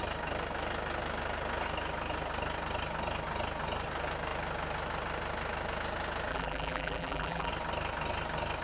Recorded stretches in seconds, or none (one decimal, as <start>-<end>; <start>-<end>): 0.0-6.3; 7.5-8.6